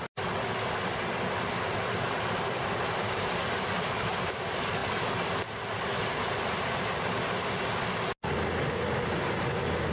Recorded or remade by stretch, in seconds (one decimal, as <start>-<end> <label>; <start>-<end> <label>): 0.0-9.9 recorded